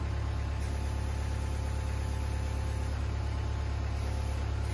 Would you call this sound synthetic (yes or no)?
no